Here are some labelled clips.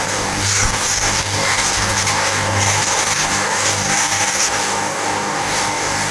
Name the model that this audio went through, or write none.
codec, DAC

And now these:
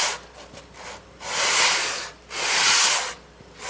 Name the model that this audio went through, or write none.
none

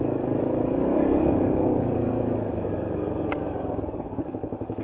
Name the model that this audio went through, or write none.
codec, DAC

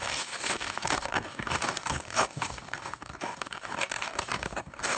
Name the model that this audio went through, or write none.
codec, DAC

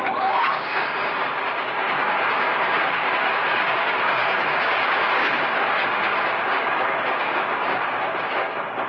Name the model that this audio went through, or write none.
codec, DAC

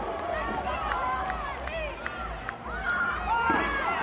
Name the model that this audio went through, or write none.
none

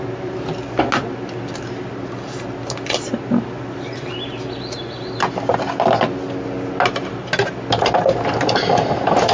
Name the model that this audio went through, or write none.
none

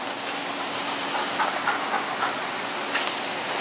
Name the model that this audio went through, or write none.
none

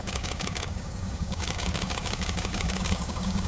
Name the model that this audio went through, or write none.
codec, DAC